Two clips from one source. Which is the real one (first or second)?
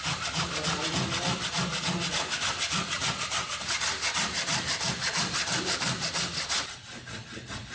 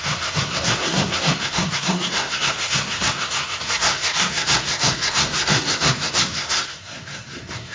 first